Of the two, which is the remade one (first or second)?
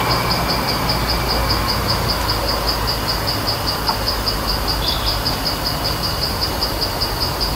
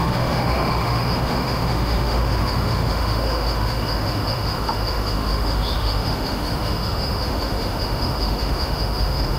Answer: second